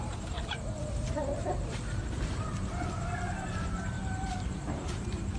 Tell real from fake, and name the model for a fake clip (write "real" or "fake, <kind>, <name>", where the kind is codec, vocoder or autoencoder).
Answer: fake, vocoder, BigVGAN v2